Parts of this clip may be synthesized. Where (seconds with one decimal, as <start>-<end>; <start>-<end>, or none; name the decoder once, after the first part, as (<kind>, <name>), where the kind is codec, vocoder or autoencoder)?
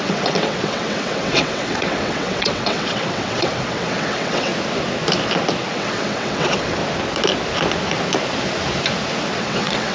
0.0-4.5 (vocoder, WaveNeXt); 5.7-6.8; 9.4-9.9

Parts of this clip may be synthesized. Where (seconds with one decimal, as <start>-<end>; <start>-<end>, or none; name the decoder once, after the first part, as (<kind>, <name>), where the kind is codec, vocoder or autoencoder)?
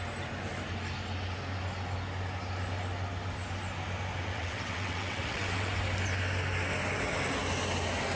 4.2-5.7 (vocoder, WaveNeXt)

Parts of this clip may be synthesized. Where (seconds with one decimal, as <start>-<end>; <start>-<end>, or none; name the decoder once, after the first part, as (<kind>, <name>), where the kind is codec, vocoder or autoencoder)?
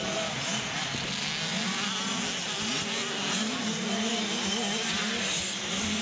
none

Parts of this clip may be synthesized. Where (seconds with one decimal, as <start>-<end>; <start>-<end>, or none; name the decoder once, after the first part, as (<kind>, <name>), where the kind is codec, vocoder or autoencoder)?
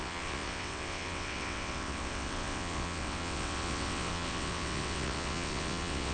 0.0-6.1 (vocoder, WaveNeXt)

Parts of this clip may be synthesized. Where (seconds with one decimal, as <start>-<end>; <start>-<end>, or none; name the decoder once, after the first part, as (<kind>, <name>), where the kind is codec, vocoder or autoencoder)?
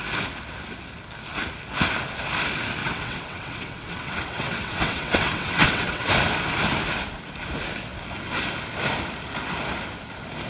2.8-6.1 (vocoder, WaveNeXt)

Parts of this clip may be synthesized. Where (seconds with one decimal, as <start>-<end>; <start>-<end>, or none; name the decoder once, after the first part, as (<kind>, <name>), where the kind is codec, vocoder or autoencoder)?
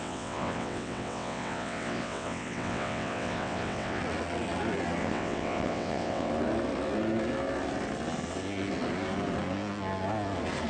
0.0-4.0 (vocoder, WaveNeXt); 5.0-6.3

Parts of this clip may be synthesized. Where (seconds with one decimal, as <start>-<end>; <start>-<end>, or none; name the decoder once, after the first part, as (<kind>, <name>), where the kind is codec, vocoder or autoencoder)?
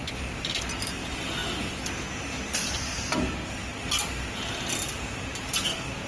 none